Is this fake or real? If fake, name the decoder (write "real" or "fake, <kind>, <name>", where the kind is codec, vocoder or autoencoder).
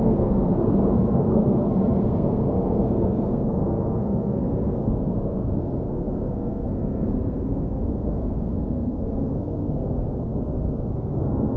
fake, codec, SNAC